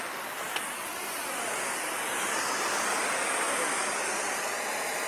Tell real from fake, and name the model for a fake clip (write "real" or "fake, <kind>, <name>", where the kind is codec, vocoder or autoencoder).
real